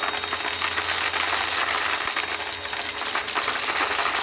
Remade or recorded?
recorded